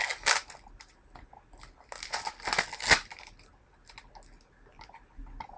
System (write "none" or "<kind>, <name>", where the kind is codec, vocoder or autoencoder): none